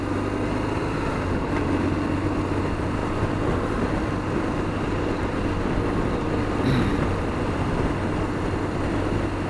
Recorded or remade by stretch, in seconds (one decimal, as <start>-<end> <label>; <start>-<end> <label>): 0.0-9.5 recorded